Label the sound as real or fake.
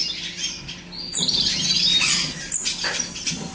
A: real